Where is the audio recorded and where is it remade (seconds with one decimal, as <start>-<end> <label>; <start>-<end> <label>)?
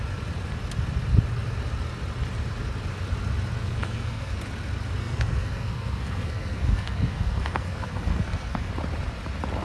0.0-3.6 recorded; 3.6-4.4 remade; 4.4-5.0 recorded; 5.0-8.7 remade; 8.7-9.6 recorded